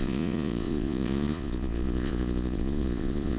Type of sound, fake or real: fake